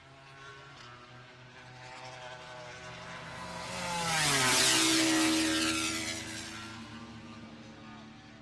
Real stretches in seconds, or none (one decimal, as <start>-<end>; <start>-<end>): 0.0-8.4

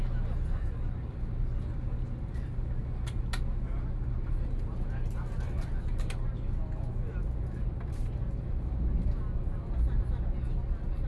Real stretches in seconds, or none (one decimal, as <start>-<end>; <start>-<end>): 0.0-11.1

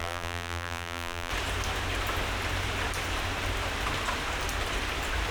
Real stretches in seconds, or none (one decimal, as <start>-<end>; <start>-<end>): 1.3-5.3

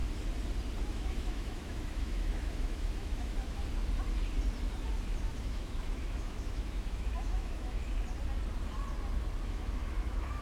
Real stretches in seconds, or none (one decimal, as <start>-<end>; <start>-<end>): 0.0-0.9; 3.6-5.4; 7.8-9.4

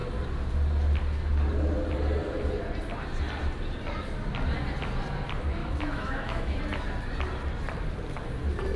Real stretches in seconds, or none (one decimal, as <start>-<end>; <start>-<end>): 0.0-5.6; 6.6-8.8